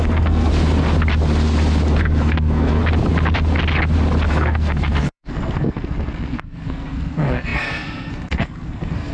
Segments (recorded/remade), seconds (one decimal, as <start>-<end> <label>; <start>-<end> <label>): 0.0-0.5 remade; 0.5-2.0 recorded; 2.0-2.8 remade; 2.8-4.3 recorded; 4.3-9.1 remade